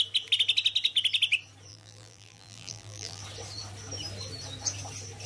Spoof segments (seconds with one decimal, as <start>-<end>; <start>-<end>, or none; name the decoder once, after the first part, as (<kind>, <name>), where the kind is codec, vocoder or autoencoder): 1.7-3.2 (vocoder, BigVGAN v2)